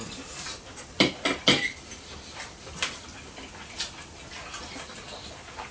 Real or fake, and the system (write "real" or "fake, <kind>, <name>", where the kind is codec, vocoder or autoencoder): fake, vocoder, BigVGAN v2